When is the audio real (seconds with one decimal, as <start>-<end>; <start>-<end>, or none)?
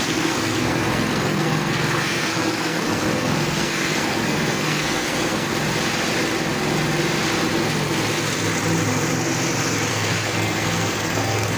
5.5-9.9